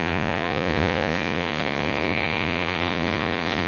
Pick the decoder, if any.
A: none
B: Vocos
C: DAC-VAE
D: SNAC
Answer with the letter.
B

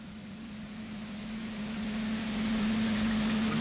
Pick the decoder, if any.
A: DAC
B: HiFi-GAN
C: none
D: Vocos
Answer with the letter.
C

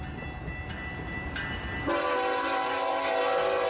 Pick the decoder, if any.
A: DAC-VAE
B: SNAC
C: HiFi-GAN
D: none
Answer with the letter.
D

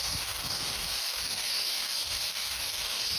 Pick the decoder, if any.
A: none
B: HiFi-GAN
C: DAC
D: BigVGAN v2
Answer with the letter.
C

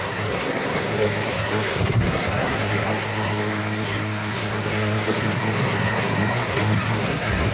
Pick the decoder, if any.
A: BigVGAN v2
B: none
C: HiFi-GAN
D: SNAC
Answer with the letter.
D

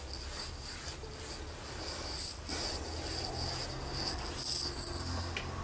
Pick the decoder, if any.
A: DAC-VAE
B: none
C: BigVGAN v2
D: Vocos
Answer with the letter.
B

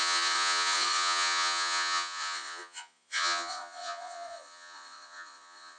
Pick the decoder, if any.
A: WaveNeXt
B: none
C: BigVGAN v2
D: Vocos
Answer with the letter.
D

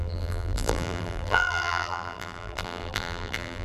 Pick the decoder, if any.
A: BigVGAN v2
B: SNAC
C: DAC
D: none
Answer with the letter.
A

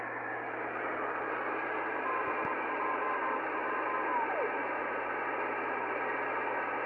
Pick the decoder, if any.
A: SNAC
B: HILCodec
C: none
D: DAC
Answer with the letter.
C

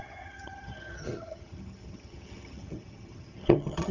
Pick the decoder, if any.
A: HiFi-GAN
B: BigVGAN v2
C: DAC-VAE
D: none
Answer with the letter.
A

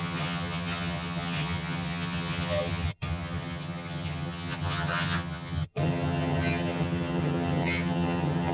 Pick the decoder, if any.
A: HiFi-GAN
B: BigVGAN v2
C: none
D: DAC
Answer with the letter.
A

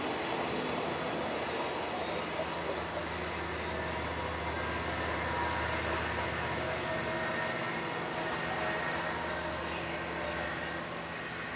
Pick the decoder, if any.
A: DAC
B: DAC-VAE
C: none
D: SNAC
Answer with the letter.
C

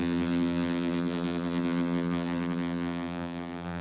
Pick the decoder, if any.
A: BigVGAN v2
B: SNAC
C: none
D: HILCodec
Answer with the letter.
A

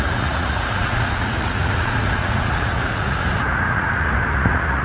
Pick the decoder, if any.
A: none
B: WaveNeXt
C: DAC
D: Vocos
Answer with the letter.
D